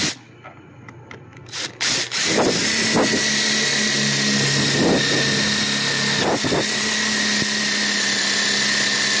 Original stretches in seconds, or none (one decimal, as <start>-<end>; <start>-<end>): 0.0-9.2